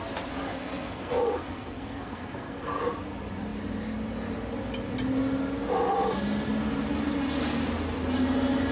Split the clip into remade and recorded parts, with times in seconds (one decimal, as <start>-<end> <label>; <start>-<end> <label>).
0.0-0.5 recorded; 0.5-2.8 remade; 2.8-8.7 recorded